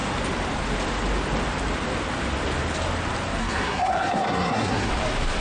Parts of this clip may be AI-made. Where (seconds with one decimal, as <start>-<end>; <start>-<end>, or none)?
3.4-4.9

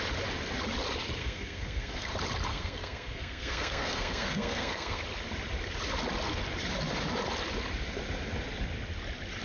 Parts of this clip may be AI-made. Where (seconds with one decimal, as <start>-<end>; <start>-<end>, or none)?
1.2-2.1; 2.5-5.0